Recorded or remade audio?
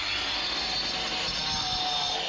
recorded